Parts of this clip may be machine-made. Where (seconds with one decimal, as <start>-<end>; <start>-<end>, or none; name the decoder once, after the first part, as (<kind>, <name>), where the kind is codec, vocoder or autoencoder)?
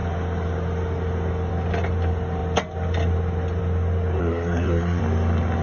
4.2-5.0 (codec, SNAC)